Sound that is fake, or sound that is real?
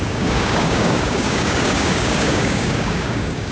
fake